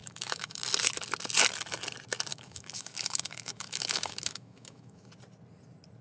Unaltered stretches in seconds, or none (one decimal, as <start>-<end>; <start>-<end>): 0.6-2.3; 5.1-6.0